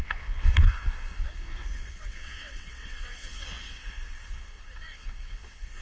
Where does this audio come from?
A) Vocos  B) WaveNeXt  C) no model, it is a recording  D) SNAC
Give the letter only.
B